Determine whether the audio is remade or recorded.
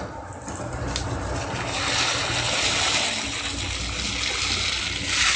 recorded